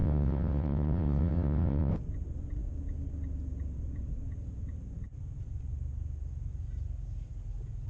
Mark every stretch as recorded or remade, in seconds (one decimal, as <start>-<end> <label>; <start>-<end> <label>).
0.0-1.9 remade; 1.9-7.9 recorded

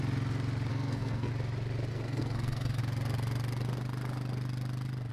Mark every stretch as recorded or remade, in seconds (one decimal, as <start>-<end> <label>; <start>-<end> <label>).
0.0-0.7 recorded; 0.7-1.3 remade; 1.3-1.9 recorded; 1.9-2.8 remade; 2.8-5.1 recorded

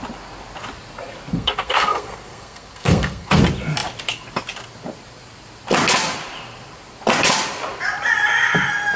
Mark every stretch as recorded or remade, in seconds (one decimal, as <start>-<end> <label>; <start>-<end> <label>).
0.0-1.3 recorded; 1.3-3.4 remade; 3.4-9.0 recorded

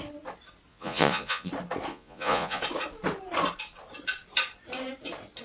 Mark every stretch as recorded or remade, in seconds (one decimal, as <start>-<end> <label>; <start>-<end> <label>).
0.0-0.7 recorded; 0.7-1.5 remade; 1.5-1.9 recorded; 1.9-2.6 remade; 2.6-5.4 recorded

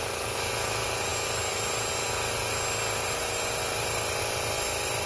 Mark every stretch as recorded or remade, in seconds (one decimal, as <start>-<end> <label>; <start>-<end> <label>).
0.0-5.1 recorded